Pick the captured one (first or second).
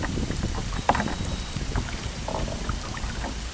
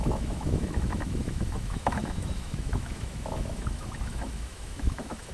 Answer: first